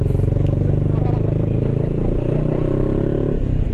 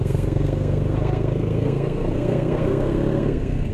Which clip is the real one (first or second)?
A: first